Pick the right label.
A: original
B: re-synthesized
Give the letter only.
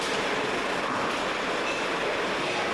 A